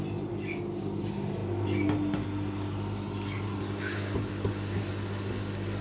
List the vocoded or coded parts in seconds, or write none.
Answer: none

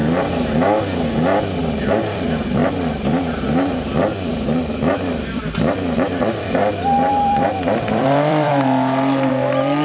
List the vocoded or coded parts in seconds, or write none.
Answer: 1.9-8.5 (vocoder, BigVGAN v2); 9.3-9.8

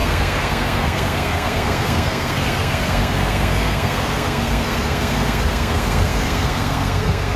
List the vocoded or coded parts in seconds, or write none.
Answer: 0.0-7.4 (codec, SNAC)

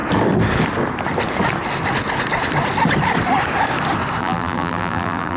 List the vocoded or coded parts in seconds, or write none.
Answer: 4.2-5.4 (vocoder, BigVGAN v2)

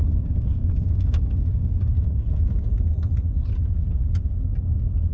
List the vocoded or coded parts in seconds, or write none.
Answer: 0.0-2.3 (codec, DAC)

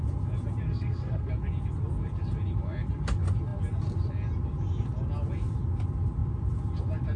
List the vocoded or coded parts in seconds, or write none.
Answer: 0.7-1.3 (codec, SNAC)